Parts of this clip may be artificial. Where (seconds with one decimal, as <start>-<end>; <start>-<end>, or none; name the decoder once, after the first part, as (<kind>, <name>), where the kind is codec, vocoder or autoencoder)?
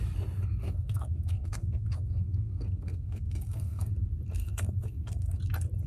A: 0.6-3.9 (codec, SNAC); 4.4-5.4